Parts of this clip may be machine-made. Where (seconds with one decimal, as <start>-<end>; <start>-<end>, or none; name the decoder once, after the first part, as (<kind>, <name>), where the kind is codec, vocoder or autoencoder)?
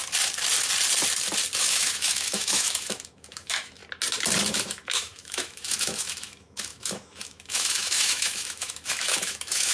1.6-3.8 (autoencoder, DAC-VAE); 4.5-9.7